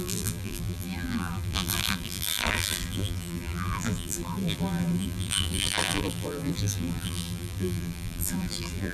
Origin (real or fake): fake